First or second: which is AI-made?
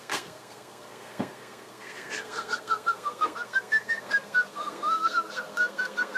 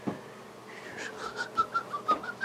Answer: first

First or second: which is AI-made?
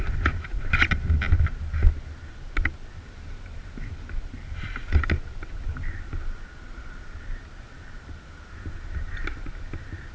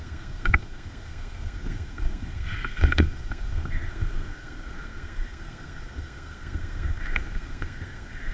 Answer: second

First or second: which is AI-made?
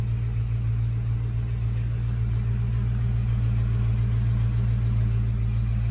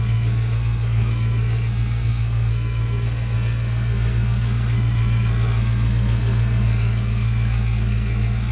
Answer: second